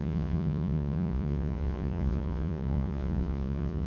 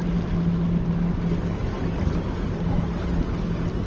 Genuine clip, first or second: second